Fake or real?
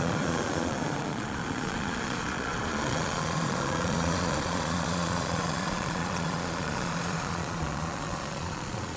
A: fake